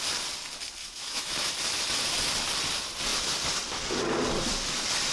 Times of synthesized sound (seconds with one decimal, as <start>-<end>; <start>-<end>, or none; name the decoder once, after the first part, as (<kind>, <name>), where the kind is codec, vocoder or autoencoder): 0.8-1.5 (autoencoder, DAC-VAE)